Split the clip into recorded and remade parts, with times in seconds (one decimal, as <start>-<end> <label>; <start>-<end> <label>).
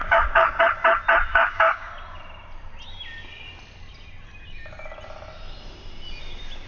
0.0-0.6 remade; 0.6-1.3 recorded; 1.3-1.9 remade; 1.9-6.7 recorded